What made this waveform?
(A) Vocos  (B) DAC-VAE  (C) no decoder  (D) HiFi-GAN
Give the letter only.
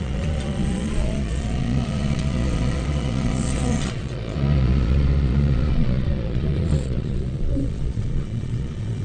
A